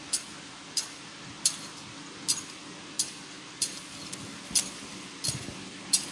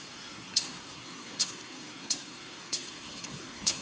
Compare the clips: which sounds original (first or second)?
first